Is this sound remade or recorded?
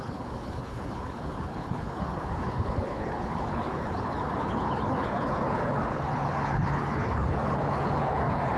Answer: remade